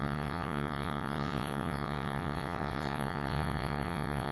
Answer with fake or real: fake